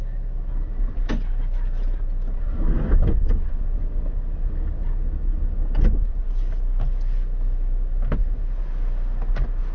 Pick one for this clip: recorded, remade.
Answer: recorded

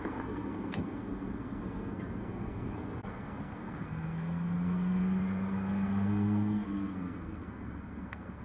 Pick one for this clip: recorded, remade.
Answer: remade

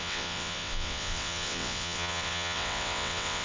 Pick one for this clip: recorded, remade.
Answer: remade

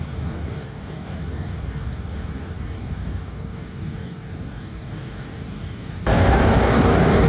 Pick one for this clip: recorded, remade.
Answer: remade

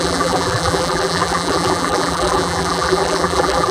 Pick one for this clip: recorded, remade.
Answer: remade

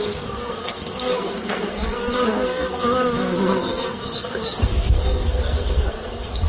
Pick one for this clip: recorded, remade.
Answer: remade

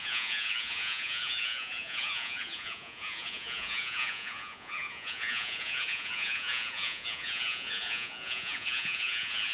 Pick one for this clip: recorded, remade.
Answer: remade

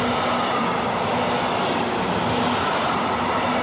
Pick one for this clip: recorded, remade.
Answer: recorded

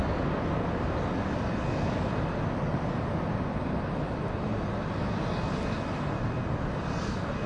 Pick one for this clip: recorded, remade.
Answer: recorded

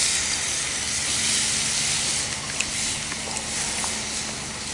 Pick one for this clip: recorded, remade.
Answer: recorded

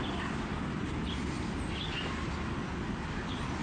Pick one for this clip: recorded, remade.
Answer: recorded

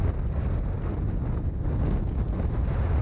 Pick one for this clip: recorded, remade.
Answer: recorded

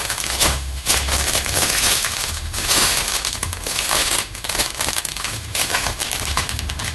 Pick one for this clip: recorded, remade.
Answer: remade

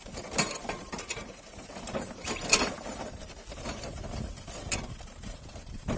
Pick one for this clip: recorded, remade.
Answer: remade